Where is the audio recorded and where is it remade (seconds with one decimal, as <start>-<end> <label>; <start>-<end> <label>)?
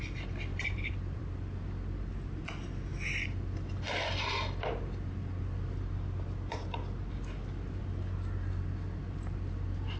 0.0-0.5 recorded; 0.5-1.3 remade; 1.3-10.0 recorded